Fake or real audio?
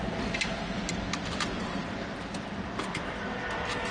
real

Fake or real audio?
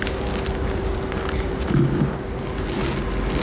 real